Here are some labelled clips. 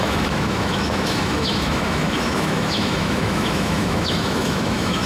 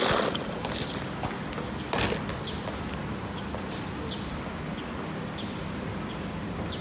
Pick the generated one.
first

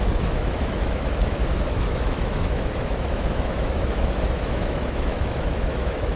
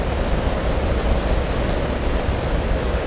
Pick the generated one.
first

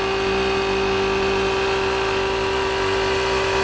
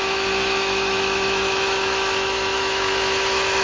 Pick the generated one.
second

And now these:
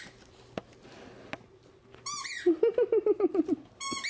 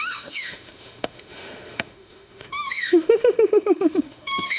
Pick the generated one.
second